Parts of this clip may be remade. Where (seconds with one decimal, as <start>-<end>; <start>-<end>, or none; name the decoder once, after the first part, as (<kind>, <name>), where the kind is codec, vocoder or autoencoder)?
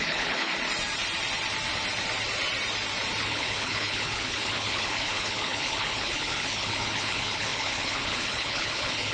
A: 0.0-0.5 (codec, HILCodec); 3.2-9.1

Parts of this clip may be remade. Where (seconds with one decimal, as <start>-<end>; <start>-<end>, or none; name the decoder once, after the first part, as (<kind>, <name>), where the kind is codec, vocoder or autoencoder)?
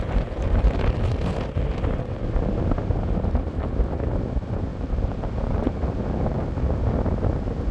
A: 4.7-6.9 (vocoder, BigVGAN v2)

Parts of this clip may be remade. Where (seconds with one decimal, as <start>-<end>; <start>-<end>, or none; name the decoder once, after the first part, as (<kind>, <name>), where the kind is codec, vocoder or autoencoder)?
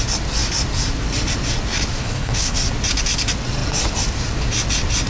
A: 2.0-2.6 (codec, HILCodec)